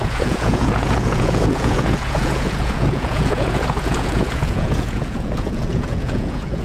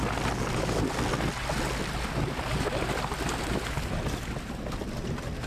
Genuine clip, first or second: second